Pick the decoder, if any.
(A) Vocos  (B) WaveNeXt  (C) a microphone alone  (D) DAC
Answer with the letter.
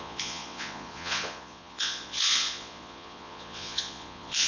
A